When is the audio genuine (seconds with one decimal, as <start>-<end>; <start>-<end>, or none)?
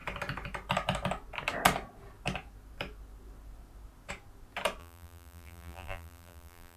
0.0-4.8